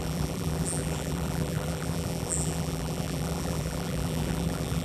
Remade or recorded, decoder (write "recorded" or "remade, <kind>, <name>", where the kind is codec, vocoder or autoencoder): remade, vocoder, BigVGAN v2